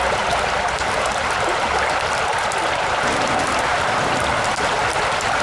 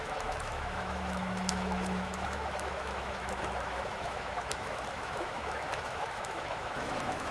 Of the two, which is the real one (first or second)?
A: first